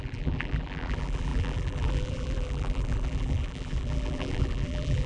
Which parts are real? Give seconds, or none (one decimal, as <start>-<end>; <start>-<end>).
none